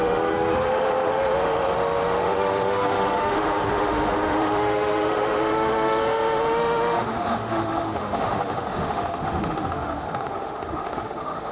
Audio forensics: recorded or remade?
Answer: remade